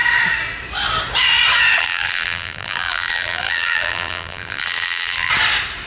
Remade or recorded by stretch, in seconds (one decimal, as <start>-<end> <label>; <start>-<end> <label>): 0.0-1.8 recorded; 1.8-5.3 remade; 5.3-5.9 recorded